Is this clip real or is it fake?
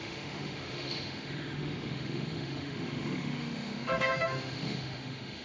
fake